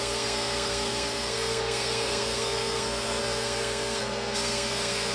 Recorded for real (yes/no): no